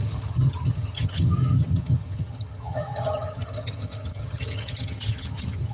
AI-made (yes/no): yes